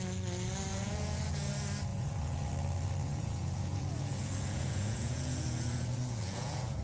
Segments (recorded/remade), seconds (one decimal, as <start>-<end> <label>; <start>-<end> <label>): 0.0-0.7 recorded; 0.7-1.5 remade; 1.5-1.9 recorded; 1.9-2.5 remade; 2.5-3.0 recorded; 3.0-6.8 remade